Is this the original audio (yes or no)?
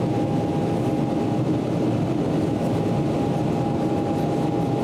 yes